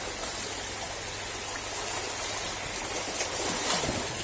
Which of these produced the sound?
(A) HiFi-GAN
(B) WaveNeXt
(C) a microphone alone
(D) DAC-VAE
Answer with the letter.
C